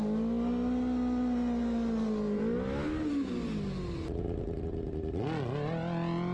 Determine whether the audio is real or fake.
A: real